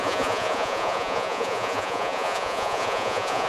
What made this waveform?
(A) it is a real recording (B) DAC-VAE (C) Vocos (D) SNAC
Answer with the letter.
C